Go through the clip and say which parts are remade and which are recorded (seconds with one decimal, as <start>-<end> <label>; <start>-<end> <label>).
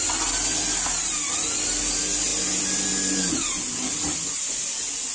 0.0-5.1 recorded